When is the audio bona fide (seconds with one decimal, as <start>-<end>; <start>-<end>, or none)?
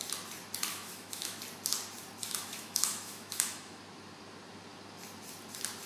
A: 0.0-0.7; 1.4-2.2; 3.8-5.9